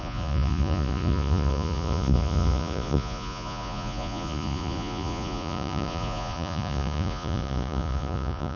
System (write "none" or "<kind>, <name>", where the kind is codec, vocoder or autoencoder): vocoder, Vocos